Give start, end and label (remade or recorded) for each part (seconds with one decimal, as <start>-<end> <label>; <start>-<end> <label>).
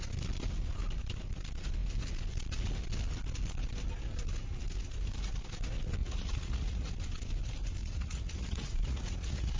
0.0-6.0 recorded; 6.0-6.9 remade; 6.9-7.8 recorded; 7.8-9.6 remade